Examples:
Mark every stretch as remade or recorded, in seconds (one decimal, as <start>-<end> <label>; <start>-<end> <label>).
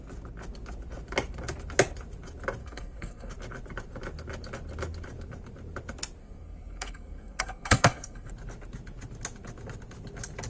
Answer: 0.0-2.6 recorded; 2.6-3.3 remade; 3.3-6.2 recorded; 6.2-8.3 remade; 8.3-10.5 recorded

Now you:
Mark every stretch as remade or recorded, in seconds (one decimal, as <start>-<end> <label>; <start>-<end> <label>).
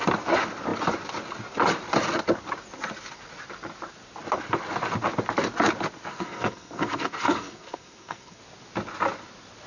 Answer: 0.0-6.1 recorded; 6.1-8.4 remade; 8.4-9.7 recorded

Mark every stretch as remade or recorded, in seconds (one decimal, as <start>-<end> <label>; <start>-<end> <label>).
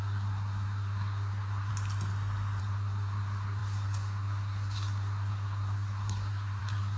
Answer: 0.0-1.7 remade; 1.7-2.6 recorded; 2.6-7.0 remade